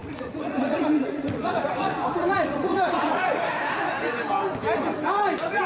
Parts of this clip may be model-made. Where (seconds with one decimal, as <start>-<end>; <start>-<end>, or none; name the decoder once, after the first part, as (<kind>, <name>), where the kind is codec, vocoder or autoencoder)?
0.0-3.4 (vocoder, Vocos)